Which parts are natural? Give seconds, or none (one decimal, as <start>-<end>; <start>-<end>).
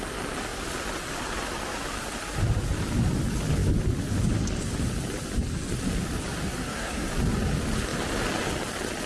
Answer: 0.0-6.5; 7.1-9.1